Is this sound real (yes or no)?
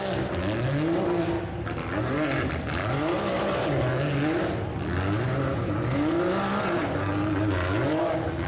yes